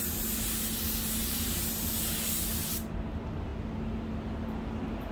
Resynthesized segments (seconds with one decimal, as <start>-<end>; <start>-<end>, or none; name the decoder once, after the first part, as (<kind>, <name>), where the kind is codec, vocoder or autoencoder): 1.2-1.7 (vocoder, BigVGAN v2)